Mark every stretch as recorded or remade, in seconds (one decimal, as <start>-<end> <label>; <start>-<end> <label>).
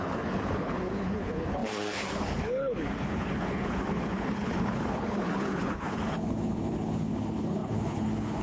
0.0-8.4 remade